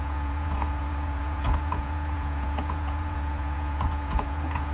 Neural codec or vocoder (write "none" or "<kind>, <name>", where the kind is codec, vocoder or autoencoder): vocoder, Vocos